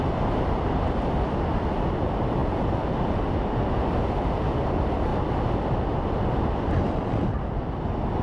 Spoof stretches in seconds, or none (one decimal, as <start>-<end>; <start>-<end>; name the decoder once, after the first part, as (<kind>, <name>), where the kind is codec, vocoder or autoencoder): none